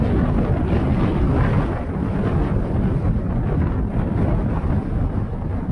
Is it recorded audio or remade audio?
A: recorded